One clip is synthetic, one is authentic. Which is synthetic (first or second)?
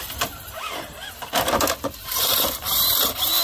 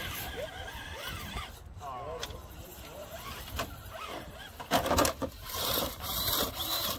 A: second